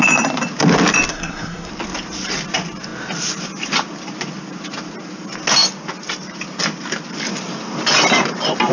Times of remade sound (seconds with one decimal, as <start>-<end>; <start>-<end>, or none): 1.1-1.7